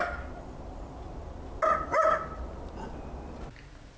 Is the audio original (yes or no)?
yes